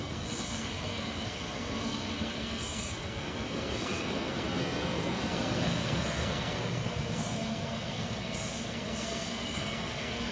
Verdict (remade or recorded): remade